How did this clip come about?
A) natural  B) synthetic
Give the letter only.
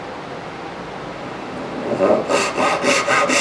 A